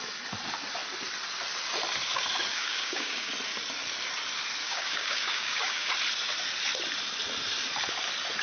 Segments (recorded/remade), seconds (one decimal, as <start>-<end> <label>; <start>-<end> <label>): 0.0-2.5 recorded; 2.5-3.3 remade; 3.3-4.6 recorded; 4.6-5.9 remade; 5.9-8.4 recorded